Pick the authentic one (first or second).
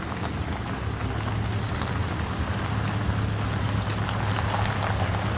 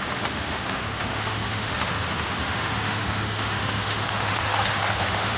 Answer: first